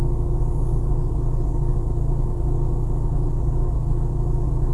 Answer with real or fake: real